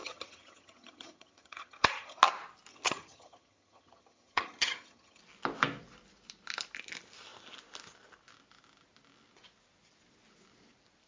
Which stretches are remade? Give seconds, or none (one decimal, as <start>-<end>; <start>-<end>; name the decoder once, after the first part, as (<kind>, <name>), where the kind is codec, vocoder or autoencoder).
0.0-2.2 (vocoder, HiFi-GAN); 2.7-5.2